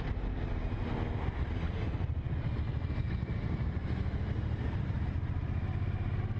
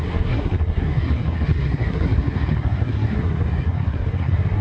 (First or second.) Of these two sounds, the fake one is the second